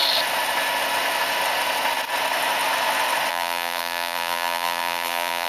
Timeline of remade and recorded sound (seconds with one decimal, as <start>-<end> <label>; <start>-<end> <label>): 0.0-3.3 recorded; 3.3-5.5 remade